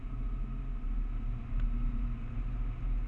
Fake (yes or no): no